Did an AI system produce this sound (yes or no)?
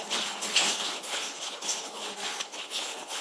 yes